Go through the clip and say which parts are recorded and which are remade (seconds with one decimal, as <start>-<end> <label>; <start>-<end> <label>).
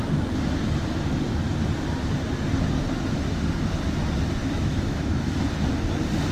0.0-4.4 recorded; 4.4-5.3 remade; 5.3-6.3 recorded